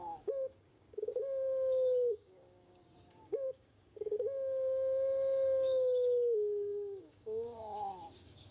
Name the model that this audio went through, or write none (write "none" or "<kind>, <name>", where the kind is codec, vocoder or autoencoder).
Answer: codec, DAC